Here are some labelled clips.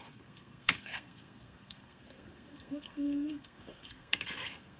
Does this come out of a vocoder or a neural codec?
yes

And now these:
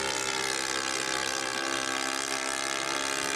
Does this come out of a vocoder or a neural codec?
no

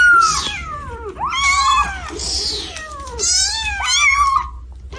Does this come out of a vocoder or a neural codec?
no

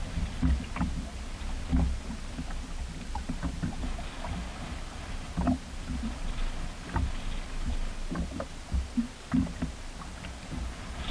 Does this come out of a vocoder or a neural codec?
no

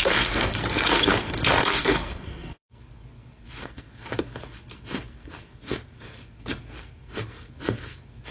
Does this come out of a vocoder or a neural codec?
yes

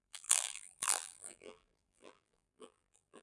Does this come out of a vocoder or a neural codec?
yes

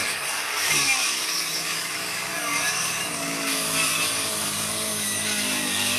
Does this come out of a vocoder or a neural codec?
yes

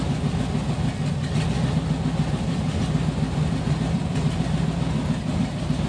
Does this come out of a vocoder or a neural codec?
no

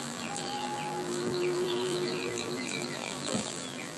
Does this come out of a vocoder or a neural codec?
yes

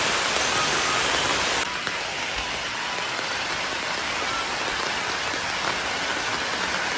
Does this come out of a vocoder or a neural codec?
no